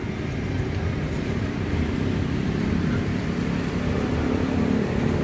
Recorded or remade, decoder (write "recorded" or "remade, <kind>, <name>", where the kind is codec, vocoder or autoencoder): remade, vocoder, BigVGAN v2